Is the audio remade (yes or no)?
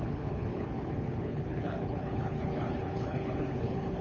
yes